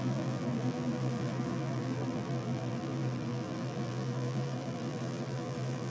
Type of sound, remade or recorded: remade